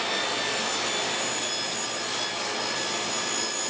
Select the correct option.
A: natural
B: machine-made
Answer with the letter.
A